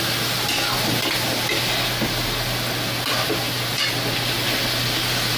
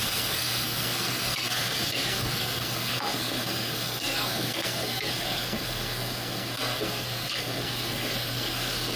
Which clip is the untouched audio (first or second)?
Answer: first